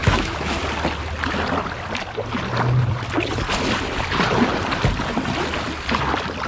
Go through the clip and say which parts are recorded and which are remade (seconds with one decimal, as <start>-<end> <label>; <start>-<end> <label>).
0.0-0.6 remade; 0.6-6.5 recorded